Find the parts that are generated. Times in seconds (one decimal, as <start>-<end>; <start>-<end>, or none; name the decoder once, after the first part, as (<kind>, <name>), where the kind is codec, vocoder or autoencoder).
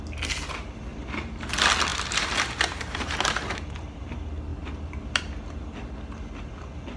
0.9-1.5 (vocoder, BigVGAN v2); 1.9-3.7; 4.5-5.2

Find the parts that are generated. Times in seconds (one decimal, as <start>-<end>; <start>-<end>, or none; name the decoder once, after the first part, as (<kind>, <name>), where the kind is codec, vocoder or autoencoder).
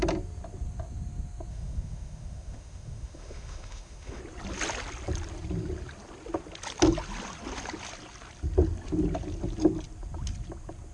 1.5-4.2 (autoencoder, DAC-VAE)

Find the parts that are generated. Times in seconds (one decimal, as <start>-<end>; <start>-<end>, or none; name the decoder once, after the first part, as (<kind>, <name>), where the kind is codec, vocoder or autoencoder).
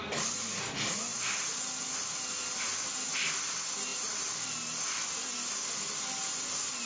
none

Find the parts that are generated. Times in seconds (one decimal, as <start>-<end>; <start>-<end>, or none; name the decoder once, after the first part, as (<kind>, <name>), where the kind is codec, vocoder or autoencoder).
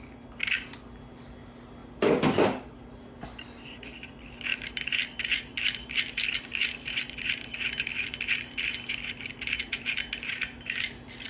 none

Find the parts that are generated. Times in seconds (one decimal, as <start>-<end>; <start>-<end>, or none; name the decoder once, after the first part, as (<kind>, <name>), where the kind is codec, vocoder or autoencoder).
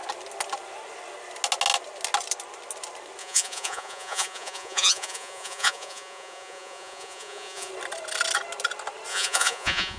3.2-7.7 (vocoder, Vocos); 9.1-10.0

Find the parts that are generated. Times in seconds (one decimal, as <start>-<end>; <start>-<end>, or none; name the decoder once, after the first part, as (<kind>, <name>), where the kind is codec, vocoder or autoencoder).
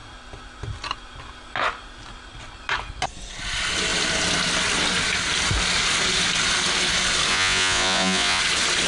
7.3-8.4 (vocoder, Vocos)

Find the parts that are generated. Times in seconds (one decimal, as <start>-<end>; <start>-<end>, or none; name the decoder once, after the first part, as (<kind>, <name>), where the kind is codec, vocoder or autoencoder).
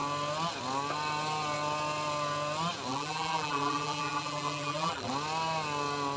2.9-5.1 (vocoder, BigVGAN v2)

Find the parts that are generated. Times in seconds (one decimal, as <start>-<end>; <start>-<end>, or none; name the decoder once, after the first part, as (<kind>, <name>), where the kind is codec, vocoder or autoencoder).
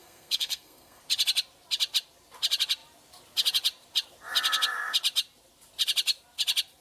0.0-1.0 (codec, SNAC)